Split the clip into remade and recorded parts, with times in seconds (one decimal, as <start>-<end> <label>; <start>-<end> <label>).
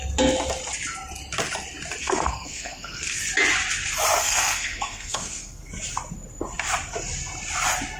0.0-2.0 recorded; 2.0-3.2 remade; 3.2-4.2 recorded; 4.2-5.7 remade; 5.7-8.0 recorded